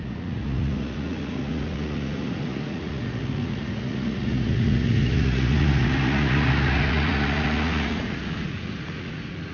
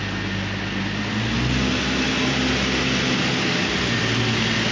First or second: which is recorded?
second